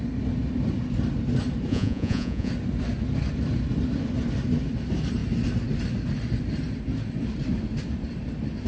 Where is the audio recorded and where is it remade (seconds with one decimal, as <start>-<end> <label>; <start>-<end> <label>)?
0.0-1.7 recorded; 1.7-2.5 remade; 2.5-8.7 recorded